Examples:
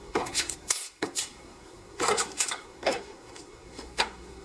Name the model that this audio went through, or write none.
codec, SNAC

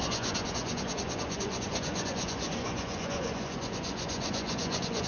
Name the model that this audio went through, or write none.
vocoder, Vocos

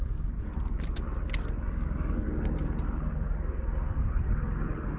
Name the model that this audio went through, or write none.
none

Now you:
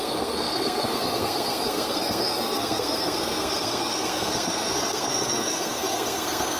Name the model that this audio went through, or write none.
codec, SNAC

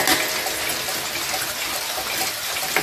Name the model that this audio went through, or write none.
none